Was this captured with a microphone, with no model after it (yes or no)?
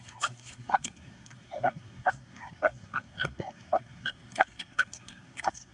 no